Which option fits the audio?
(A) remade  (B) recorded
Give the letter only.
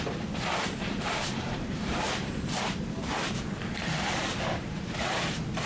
A